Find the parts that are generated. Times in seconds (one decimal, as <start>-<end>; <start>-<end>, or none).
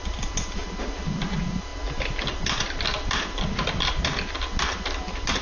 none